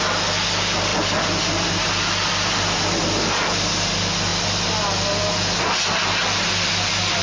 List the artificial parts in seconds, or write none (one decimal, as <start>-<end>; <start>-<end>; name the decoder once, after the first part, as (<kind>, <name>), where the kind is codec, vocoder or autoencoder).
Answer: none